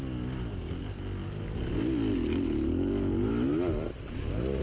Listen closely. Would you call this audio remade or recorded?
recorded